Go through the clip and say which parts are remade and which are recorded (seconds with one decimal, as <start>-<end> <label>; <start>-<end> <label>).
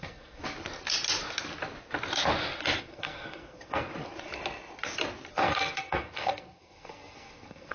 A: 0.0-0.4 remade; 0.4-2.8 recorded; 2.8-3.9 remade; 3.9-5.3 recorded; 5.3-7.7 remade